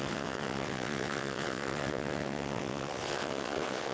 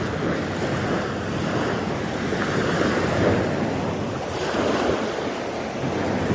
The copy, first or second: first